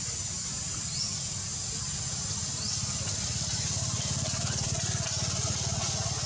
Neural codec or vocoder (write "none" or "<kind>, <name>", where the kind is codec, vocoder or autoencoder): none